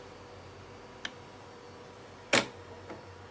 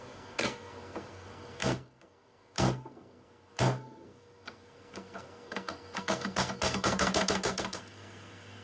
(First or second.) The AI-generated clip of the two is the second